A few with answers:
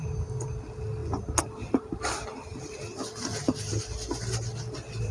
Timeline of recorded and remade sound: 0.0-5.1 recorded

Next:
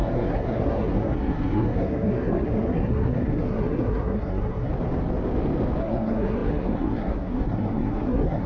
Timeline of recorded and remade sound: 0.0-4.7 remade; 4.7-5.8 recorded; 5.8-8.5 remade

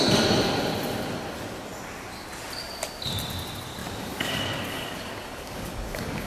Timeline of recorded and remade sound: 0.0-3.8 recorded; 3.8-6.3 remade

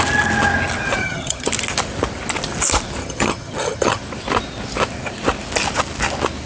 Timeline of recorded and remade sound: 0.0-1.0 recorded; 1.0-1.5 remade; 1.5-3.0 recorded; 3.0-4.0 remade; 4.0-6.5 recorded

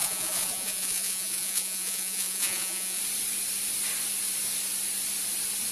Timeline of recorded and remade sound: 0.0-3.0 remade; 3.0-5.7 recorded